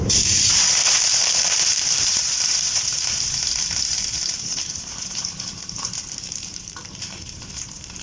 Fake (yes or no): yes